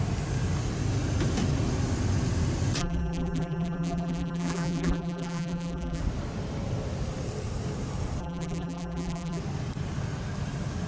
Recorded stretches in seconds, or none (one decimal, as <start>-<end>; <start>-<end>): 0.0-2.8; 6.0-8.2; 9.4-10.9